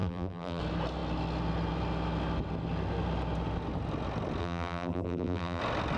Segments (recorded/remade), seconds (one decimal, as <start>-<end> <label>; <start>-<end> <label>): 0.0-0.6 remade; 0.6-4.4 recorded; 4.4-5.6 remade; 5.6-6.0 recorded